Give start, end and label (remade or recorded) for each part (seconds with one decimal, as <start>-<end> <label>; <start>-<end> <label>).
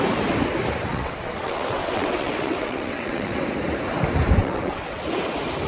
0.0-0.9 recorded; 0.9-3.4 remade; 3.4-4.4 recorded; 4.4-5.0 remade; 5.0-5.7 recorded